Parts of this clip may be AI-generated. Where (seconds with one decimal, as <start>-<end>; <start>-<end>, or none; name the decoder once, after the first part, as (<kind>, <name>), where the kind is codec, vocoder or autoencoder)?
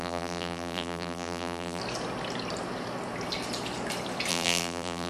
0.0-1.8 (vocoder, BigVGAN v2); 4.3-5.1